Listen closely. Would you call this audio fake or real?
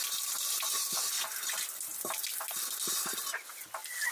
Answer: real